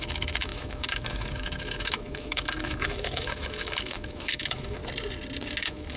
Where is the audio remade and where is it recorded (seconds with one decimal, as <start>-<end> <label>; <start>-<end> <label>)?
0.0-4.8 remade; 4.8-5.6 recorded; 5.6-6.0 remade